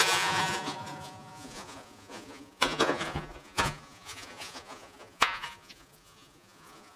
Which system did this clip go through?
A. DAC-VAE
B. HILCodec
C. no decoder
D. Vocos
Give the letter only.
D